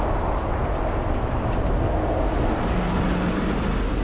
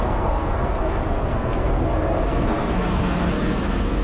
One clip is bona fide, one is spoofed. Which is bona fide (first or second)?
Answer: first